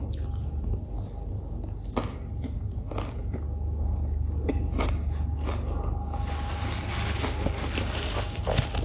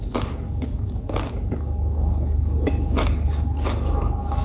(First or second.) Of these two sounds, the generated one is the second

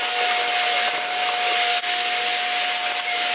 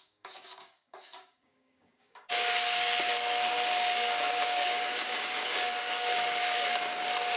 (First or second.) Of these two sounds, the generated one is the second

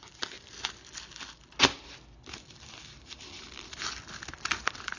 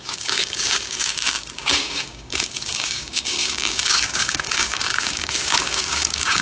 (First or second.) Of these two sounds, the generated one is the second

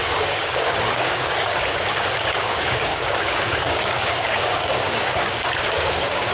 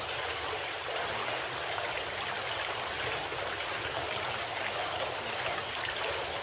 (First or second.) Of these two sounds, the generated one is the first